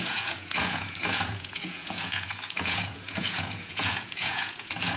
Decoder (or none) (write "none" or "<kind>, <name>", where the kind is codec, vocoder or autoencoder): vocoder, Vocos